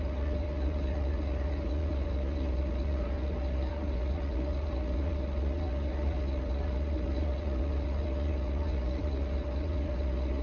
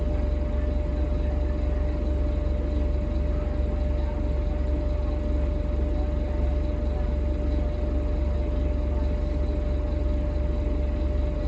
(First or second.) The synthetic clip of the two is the first